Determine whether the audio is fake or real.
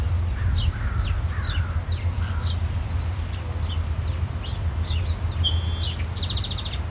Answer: real